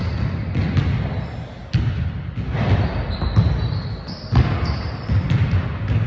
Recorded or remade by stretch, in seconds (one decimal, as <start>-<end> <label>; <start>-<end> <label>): 0.0-6.1 recorded